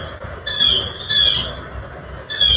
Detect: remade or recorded recorded